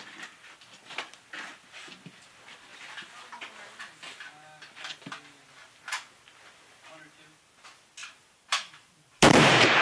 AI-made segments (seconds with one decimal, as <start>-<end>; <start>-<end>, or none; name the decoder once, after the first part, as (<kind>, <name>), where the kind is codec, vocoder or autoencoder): 8.0-9.8 (vocoder, BigVGAN v2)